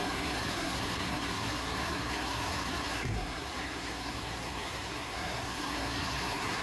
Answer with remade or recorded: remade